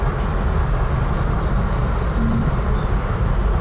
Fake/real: real